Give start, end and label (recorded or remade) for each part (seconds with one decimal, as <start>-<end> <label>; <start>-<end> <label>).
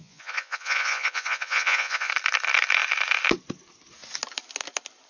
0.0-2.1 remade; 2.1-5.1 recorded